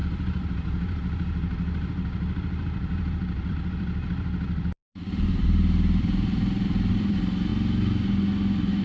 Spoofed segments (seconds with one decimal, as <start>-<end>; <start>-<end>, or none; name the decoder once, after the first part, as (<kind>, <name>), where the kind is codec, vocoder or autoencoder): 0.0-7.5 (vocoder, BigVGAN v2)